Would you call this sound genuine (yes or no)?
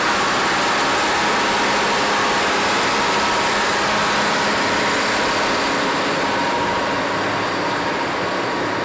yes